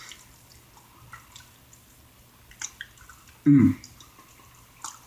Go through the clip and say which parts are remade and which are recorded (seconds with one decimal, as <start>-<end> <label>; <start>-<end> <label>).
0.0-5.1 recorded